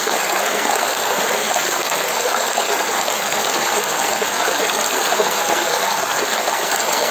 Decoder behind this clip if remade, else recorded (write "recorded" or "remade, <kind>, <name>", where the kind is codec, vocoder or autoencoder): remade, codec, SNAC